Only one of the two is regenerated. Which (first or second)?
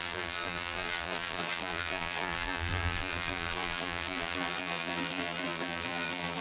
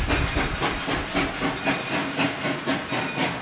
first